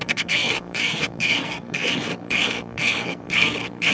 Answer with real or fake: fake